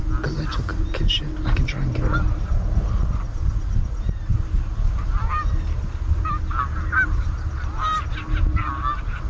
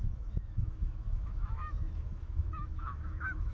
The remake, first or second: second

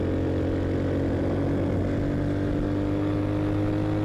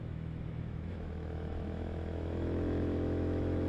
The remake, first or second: second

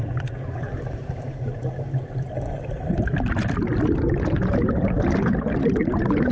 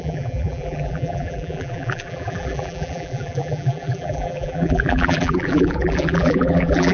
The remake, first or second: second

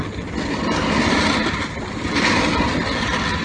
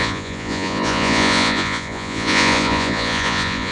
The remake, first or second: second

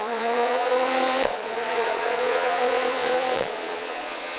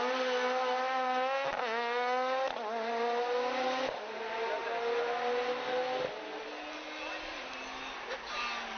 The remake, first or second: first